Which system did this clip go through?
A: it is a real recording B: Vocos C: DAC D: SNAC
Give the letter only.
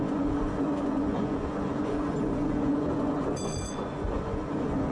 B